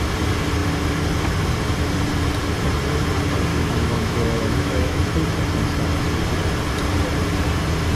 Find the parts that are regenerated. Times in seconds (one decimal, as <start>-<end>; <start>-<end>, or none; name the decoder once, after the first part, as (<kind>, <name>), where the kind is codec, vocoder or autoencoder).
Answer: 3.5-5.0 (autoencoder, DAC-VAE)